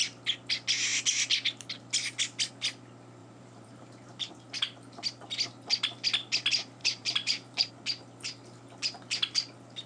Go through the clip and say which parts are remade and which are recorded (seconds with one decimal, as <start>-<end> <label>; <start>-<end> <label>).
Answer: 0.0-3.2 recorded; 3.2-4.3 remade; 4.3-6.8 recorded; 6.8-7.7 remade; 7.7-9.9 recorded